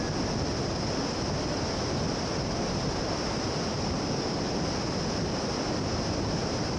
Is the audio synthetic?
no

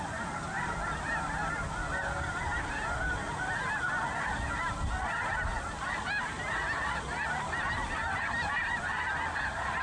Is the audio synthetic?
no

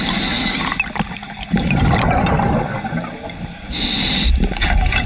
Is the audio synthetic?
no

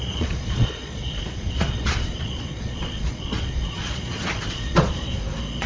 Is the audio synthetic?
yes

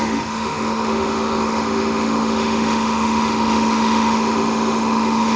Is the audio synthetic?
yes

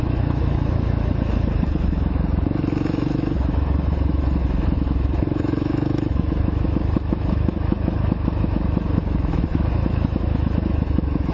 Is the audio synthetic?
yes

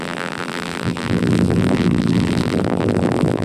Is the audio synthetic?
yes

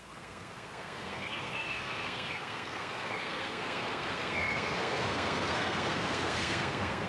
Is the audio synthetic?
yes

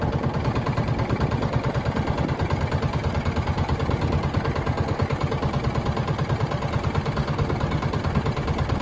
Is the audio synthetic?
no